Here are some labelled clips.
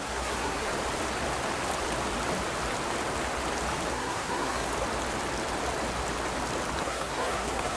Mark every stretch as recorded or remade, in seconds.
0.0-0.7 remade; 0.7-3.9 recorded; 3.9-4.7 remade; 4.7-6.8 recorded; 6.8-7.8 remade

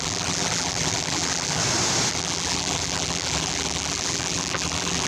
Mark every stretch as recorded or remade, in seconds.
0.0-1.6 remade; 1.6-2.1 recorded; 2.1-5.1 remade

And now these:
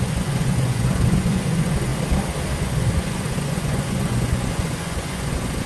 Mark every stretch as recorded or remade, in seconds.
0.0-1.9 remade; 1.9-2.6 recorded; 2.6-5.7 remade

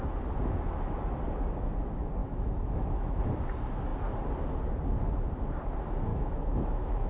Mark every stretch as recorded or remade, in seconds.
0.0-2.2 recorded; 2.2-3.2 remade; 3.2-6.1 recorded; 6.1-7.1 remade

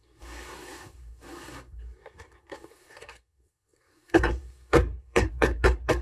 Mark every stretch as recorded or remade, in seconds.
0.0-6.0 remade

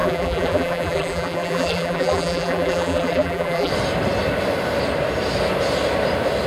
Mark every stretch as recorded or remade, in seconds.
0.0-3.7 remade; 3.7-6.5 recorded

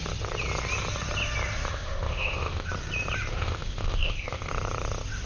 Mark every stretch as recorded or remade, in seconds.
0.0-1.7 recorded; 1.7-2.7 remade; 2.7-3.3 recorded; 3.3-4.5 remade; 4.5-5.3 recorded